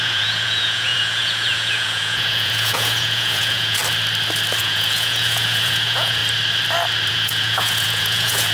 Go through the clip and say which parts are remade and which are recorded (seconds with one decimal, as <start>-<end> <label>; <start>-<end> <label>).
0.0-3.8 remade; 3.8-4.6 recorded; 4.6-6.2 remade; 6.2-7.1 recorded; 7.1-8.5 remade